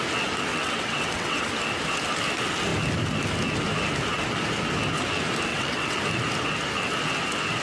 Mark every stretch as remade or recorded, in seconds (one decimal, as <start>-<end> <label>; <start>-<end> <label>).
0.0-0.5 recorded; 0.5-1.5 remade; 1.5-5.5 recorded; 5.5-6.0 remade; 6.0-7.6 recorded